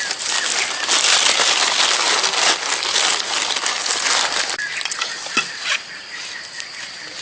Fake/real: real